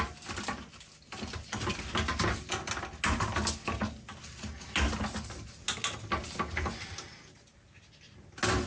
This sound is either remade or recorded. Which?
recorded